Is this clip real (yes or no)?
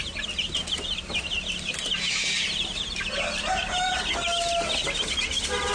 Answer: yes